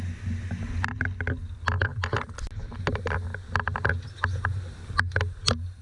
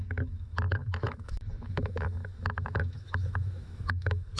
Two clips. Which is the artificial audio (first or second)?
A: second